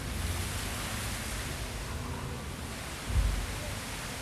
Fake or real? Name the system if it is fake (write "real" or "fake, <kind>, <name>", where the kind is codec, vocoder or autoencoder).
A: real